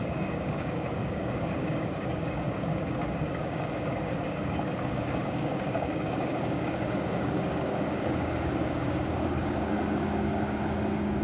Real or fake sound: fake